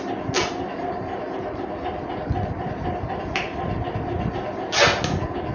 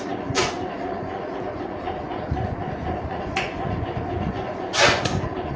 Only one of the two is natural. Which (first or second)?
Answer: first